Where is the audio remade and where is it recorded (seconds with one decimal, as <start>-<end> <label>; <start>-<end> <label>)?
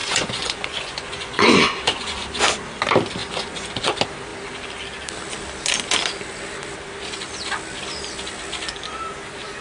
0.0-2.4 remade; 2.4-3.2 recorded; 3.2-3.9 remade; 3.9-9.6 recorded